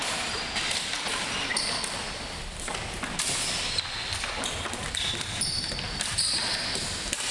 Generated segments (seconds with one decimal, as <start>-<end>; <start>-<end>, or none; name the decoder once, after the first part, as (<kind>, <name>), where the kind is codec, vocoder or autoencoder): 0.0-0.6 (vocoder, BigVGAN v2)